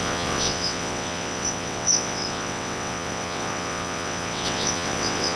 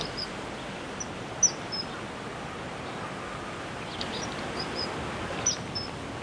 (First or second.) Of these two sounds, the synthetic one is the first